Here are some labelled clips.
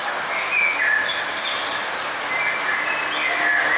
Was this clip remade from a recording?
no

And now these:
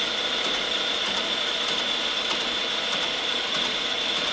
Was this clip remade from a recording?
yes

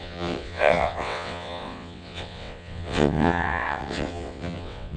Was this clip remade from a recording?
yes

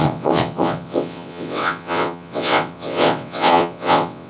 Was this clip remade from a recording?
yes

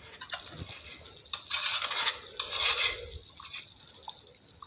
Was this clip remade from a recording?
no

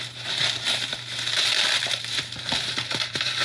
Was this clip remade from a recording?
yes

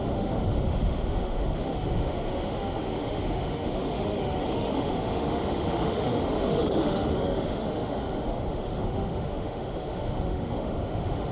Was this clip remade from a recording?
yes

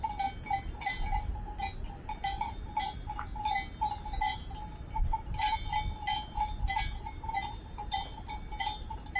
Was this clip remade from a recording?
no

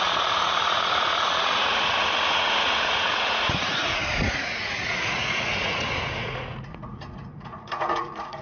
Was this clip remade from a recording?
yes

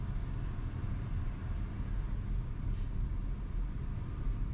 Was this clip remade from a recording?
no